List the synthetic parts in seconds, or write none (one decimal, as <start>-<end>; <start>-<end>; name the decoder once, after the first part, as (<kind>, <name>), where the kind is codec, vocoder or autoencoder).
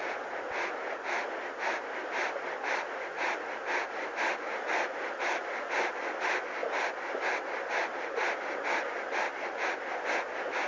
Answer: none